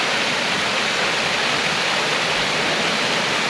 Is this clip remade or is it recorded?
recorded